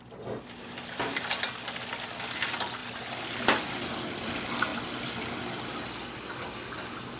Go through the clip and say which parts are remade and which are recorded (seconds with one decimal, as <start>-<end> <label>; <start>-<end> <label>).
0.0-2.8 recorded; 2.8-3.4 remade; 3.4-7.2 recorded